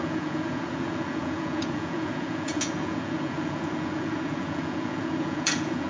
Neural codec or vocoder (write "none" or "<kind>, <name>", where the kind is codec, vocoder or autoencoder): vocoder, Vocos